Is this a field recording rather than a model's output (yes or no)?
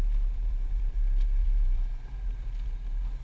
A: no